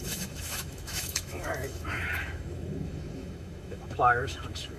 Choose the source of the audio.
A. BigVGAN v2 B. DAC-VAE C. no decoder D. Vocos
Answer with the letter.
B